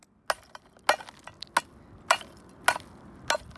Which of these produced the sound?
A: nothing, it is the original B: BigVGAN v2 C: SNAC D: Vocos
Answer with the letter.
A